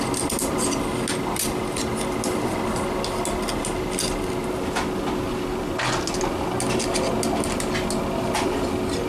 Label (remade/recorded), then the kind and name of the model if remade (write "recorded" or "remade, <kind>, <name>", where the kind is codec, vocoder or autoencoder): recorded